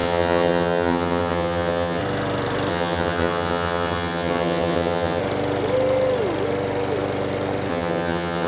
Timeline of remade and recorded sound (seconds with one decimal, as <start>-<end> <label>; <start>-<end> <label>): 0.0-2.0 remade; 2.0-2.7 recorded; 2.7-5.2 remade; 5.2-7.7 recorded; 7.7-8.5 remade

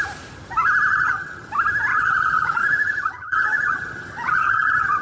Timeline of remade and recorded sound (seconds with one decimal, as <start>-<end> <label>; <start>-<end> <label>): 0.0-0.9 recorded; 0.9-1.5 remade; 1.5-1.9 recorded; 1.9-5.0 remade

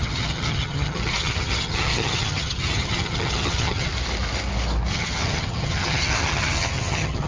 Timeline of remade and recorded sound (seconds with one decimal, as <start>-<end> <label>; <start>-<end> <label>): 0.0-3.9 remade; 3.9-4.9 recorded; 4.9-7.3 remade